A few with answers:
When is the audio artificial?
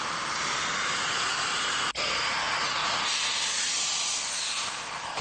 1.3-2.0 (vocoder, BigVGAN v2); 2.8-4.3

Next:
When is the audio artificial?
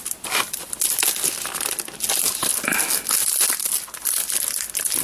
none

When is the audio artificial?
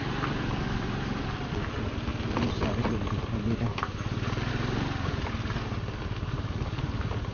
none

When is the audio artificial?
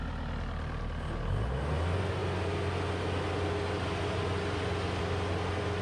none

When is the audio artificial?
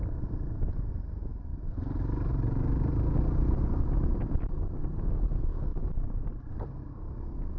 1.5-2.9 (vocoder, BigVGAN v2); 5.7-6.3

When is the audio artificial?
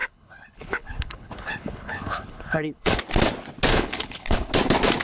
0.0-3.0 (codec, HILCodec); 3.7-4.5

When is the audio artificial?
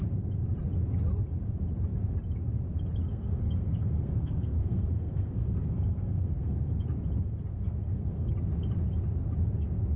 3.1-6.7 (codec, SNAC); 7.5-8.3